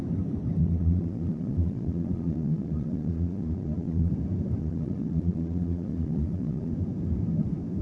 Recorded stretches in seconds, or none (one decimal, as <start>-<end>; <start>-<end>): 0.0-0.6; 4.1-4.6; 6.7-7.8